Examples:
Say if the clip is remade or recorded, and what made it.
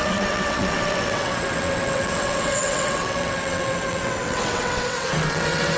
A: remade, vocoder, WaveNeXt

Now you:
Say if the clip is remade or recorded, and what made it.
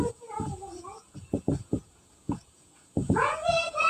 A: remade, vocoder, Vocos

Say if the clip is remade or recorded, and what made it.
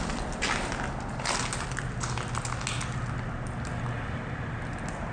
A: recorded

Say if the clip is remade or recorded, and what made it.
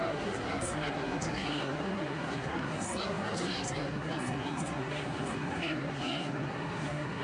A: remade, codec, SNAC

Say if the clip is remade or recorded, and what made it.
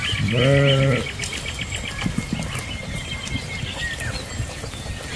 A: recorded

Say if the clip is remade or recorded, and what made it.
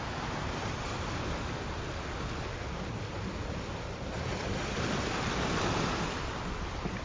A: recorded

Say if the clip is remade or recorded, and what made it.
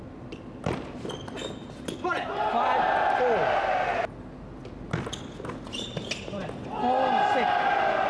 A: recorded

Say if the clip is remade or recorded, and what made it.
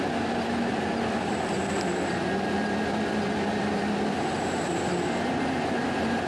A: recorded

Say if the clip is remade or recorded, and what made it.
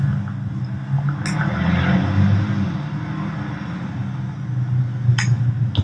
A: recorded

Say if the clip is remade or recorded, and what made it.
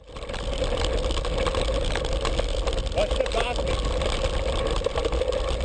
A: recorded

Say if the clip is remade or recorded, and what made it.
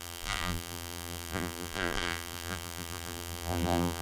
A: remade, vocoder, BigVGAN v2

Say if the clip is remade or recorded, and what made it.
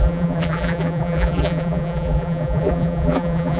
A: remade, vocoder, BigVGAN v2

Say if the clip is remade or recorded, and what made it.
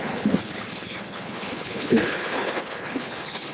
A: remade, codec, HILCodec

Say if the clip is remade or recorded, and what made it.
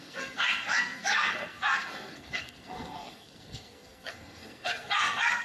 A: remade, codec, SNAC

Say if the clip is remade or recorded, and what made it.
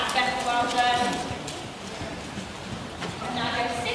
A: recorded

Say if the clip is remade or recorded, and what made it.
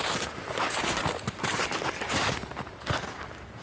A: recorded